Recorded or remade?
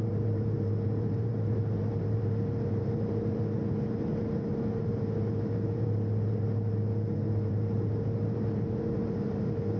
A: remade